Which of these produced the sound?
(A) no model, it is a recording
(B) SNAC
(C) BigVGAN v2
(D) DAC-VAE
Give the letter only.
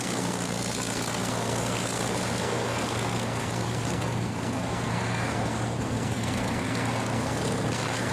B